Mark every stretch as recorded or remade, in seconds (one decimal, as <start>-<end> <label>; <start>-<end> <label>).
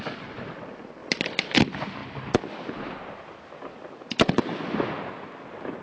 0.0-5.8 recorded